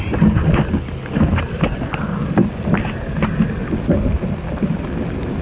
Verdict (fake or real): real